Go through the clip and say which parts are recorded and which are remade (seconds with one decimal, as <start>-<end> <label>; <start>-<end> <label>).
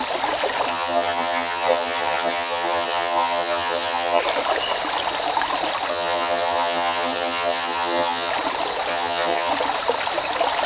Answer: 0.0-0.7 recorded; 0.7-4.2 remade; 4.2-5.9 recorded; 5.9-8.3 remade; 8.3-8.9 recorded; 8.9-9.5 remade; 9.5-10.7 recorded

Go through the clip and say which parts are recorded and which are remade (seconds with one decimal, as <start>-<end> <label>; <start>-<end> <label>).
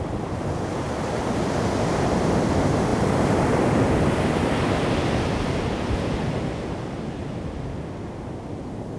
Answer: 0.0-9.0 recorded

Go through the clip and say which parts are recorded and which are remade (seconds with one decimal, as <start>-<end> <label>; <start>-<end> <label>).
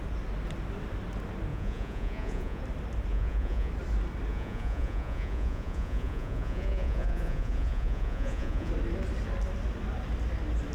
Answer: 0.0-1.5 recorded; 1.5-2.6 remade; 2.6-3.1 recorded; 3.1-3.7 remade; 3.7-4.3 recorded; 4.3-8.7 remade; 8.7-10.7 recorded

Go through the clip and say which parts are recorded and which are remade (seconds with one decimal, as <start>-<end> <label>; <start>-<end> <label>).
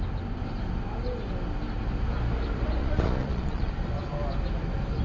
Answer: 0.0-2.8 recorded; 2.8-3.7 remade; 3.7-5.0 recorded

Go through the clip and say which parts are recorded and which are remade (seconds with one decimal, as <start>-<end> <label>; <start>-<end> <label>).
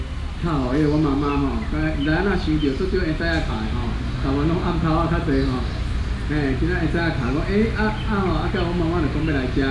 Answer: 0.0-9.7 recorded